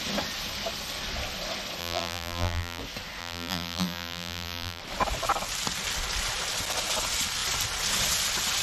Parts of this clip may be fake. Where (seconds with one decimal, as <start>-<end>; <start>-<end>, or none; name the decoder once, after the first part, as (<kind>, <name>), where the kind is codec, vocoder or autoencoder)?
1.8-2.8 (vocoder, BigVGAN v2); 3.2-4.8